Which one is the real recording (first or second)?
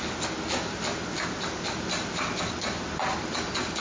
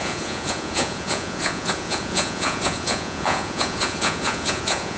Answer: first